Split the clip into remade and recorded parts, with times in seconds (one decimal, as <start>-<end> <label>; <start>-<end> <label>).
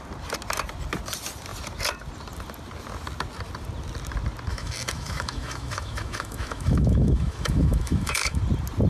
0.0-4.5 recorded; 4.5-8.4 remade; 8.4-8.9 recorded